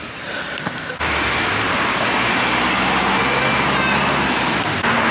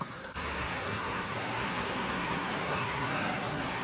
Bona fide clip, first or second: first